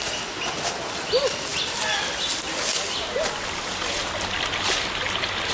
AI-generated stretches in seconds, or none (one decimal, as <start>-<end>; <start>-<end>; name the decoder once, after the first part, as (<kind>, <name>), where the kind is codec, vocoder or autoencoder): none